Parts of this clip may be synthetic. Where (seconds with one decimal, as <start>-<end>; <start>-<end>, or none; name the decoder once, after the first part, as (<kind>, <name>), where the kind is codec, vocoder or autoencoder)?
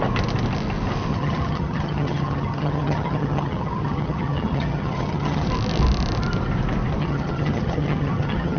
1.1-5.5 (vocoder, HiFi-GAN); 7.0-8.6